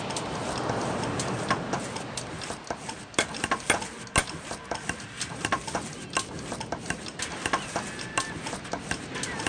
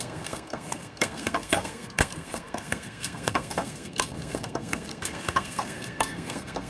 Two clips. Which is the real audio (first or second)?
first